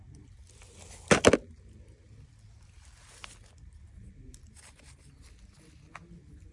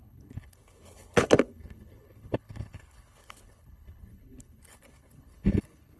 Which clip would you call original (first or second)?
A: first